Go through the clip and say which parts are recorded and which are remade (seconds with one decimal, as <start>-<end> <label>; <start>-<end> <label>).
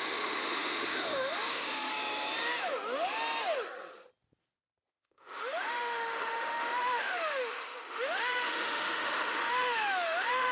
0.0-1.9 remade; 1.9-4.9 recorded; 4.9-10.5 remade